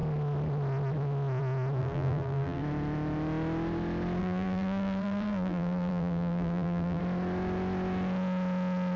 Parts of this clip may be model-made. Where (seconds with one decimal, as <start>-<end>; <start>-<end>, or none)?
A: 1.8-2.6; 4.2-7.0

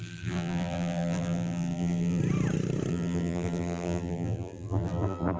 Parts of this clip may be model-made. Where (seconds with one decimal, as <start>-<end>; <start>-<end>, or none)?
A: 0.0-2.2; 2.9-5.4

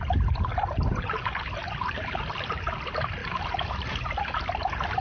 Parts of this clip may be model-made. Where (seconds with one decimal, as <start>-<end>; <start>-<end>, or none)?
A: 0.5-2.2; 3.2-4.5

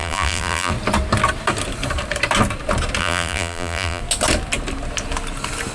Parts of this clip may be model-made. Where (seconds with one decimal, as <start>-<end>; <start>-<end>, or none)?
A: 0.0-0.7; 3.0-4.0

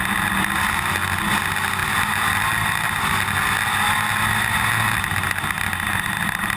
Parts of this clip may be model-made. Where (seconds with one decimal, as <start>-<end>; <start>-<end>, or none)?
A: none

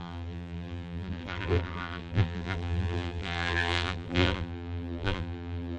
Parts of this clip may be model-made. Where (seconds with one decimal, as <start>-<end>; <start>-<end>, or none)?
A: 0.0-5.8

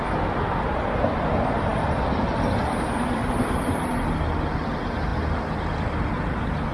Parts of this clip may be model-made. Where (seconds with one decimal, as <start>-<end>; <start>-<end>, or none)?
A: none